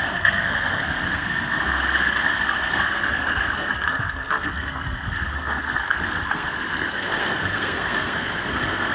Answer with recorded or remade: remade